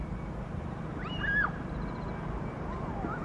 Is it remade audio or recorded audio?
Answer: recorded